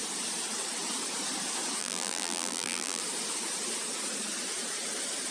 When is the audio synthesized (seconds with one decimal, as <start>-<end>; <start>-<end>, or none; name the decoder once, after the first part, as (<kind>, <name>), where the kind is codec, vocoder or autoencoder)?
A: 1.8-3.0 (vocoder, BigVGAN v2)